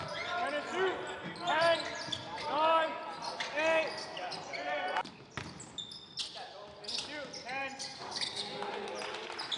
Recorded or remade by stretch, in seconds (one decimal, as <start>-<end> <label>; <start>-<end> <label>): 0.0-9.6 recorded